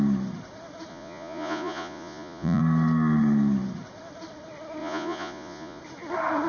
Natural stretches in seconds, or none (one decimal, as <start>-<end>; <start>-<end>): 0.0-0.9; 2.6-4.8; 5.8-6.5